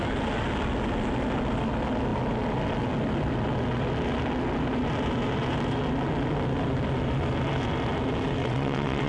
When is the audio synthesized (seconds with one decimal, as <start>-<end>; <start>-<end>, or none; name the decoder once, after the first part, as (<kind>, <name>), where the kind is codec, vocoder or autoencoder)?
8.4-9.1 (vocoder, WaveNeXt)